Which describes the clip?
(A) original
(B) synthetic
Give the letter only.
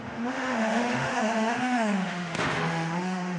B